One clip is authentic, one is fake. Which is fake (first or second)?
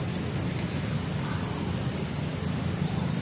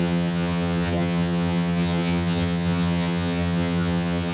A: second